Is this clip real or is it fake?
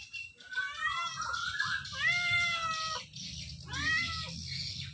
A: real